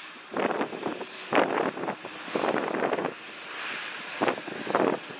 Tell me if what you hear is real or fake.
real